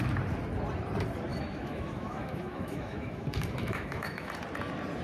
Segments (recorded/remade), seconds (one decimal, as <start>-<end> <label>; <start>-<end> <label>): 0.0-1.3 recorded; 1.3-4.3 remade; 4.3-5.0 recorded